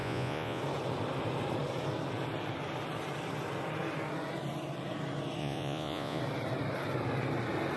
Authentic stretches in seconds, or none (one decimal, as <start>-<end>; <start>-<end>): 0.6-5.4; 6.2-7.8